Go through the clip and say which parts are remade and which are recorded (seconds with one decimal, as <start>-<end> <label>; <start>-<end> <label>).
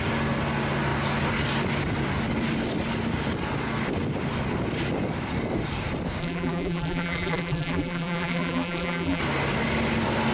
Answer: 0.0-6.2 recorded; 6.2-9.2 remade; 9.2-10.3 recorded